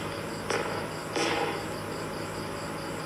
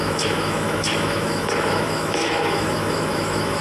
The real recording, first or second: first